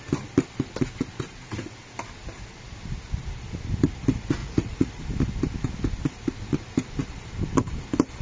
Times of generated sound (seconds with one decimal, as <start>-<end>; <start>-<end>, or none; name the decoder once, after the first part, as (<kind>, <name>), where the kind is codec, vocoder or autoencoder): 4.4-5.0 (vocoder, Vocos)